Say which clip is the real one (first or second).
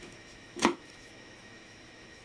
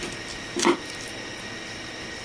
second